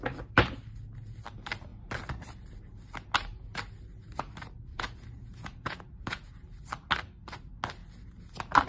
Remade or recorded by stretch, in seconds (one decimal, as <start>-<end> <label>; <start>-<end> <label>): 0.0-4.7 recorded; 4.7-6.3 remade; 6.3-8.7 recorded